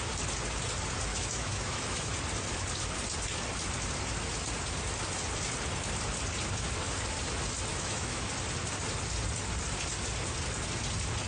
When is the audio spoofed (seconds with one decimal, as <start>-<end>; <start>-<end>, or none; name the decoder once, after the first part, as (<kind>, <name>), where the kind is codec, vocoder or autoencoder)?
1.1-2.1 (autoencoder, DAC-VAE); 7.7-8.3